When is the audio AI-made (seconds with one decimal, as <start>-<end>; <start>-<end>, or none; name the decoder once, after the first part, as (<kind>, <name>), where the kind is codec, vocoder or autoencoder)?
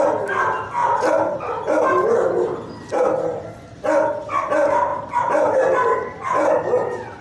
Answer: none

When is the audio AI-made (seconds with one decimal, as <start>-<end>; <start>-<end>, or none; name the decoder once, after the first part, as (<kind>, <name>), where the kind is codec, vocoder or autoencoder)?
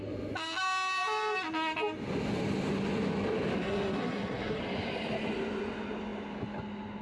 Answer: 3.6-4.6 (codec, SNAC)